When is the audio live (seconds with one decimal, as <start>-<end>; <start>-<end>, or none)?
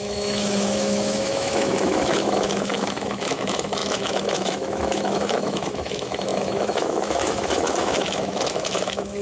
none